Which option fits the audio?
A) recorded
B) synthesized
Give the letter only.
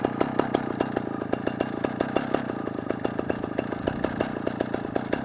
A